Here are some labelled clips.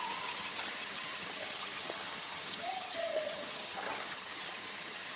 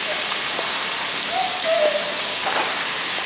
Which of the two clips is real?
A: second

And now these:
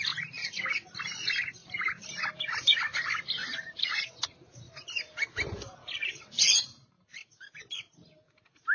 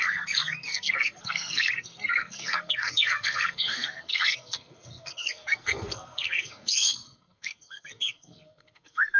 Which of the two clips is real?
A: first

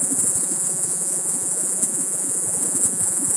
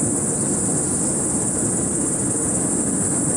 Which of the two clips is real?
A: second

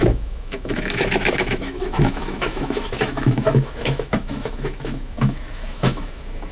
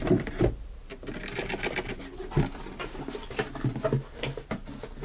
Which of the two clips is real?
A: second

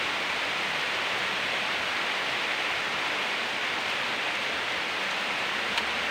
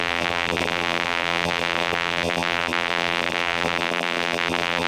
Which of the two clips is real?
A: first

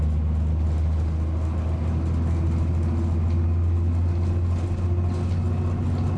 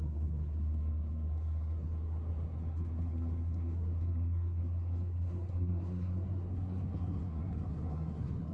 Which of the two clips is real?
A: first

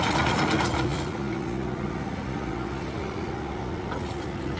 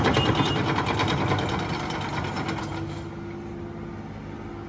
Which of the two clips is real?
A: second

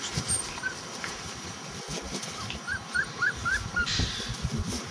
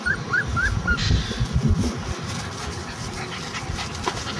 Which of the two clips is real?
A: second